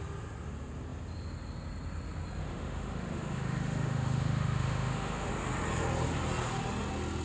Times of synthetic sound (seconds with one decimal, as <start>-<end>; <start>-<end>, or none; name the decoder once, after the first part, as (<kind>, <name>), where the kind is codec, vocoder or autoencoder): 2.4-5.3 (autoencoder, DAC-VAE)